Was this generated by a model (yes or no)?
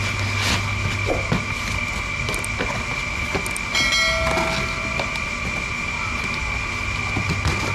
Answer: no